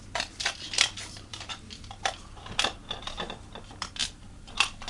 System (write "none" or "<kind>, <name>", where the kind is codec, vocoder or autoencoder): vocoder, BigVGAN v2